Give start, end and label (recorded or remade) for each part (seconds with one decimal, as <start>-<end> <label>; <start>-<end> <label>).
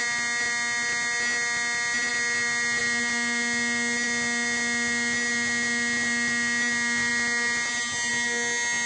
0.0-8.9 recorded